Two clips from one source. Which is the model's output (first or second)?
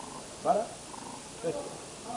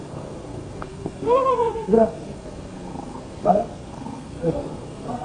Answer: second